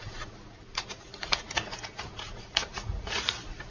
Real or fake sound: fake